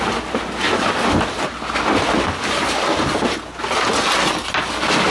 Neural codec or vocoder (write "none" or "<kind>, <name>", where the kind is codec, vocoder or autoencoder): none